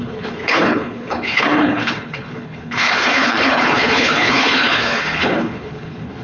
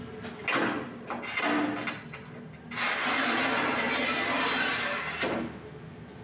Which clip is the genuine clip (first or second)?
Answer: second